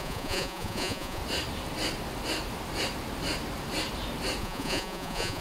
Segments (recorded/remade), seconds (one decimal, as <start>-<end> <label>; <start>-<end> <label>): 0.0-1.2 remade; 1.2-4.4 recorded; 4.4-5.4 remade